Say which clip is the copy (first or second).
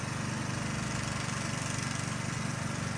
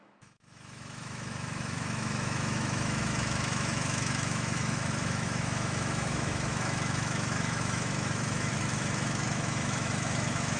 second